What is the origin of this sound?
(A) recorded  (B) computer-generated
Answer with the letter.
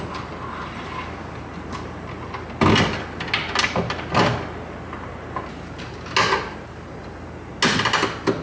A